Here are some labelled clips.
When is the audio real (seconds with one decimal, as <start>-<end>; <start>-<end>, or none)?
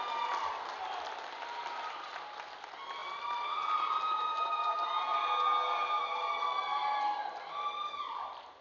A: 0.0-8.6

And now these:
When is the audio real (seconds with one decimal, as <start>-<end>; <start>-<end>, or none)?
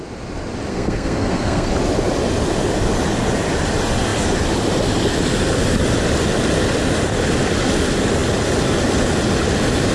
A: 0.0-0.7; 1.7-9.9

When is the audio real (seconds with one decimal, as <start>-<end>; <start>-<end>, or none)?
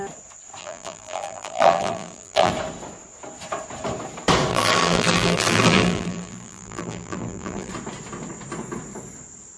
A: 0.0-0.6; 2.5-4.5; 7.7-9.6